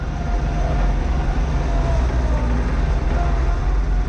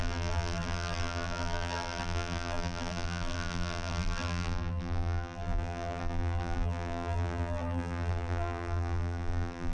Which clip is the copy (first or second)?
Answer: second